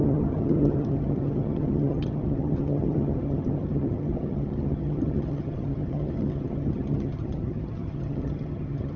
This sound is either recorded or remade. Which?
remade